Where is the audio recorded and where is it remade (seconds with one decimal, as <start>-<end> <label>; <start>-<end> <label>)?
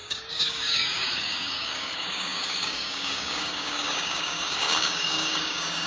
0.0-5.9 remade